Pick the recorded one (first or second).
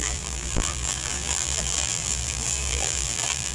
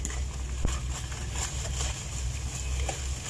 second